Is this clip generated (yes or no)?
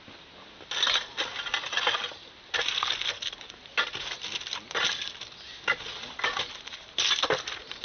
no